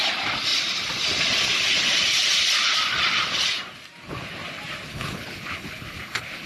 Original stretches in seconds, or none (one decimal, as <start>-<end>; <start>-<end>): 0.0-4.9